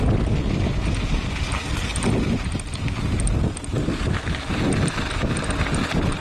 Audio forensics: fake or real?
real